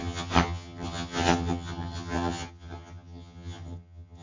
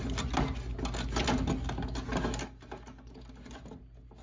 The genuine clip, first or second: second